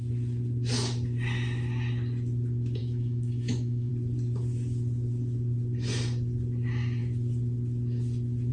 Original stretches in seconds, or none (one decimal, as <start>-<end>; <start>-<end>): 0.0-2.8; 3.9-8.5